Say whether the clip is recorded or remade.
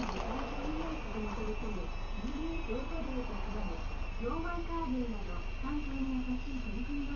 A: recorded